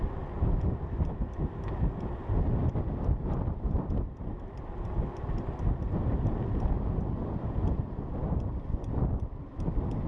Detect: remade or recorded recorded